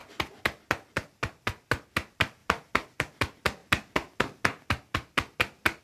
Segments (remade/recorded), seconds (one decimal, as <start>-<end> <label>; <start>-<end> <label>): 0.0-5.8 recorded